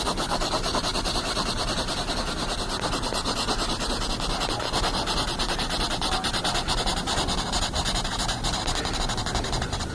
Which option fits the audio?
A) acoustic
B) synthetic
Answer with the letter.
A